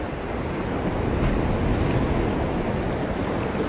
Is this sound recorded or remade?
recorded